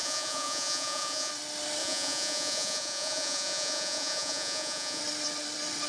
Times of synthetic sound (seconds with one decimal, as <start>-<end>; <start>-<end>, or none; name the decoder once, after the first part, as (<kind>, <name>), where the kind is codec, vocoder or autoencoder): 0.0-1.3 (vocoder, Vocos); 1.8-5.0